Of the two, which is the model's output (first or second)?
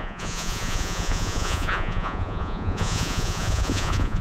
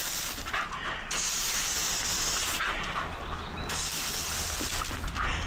first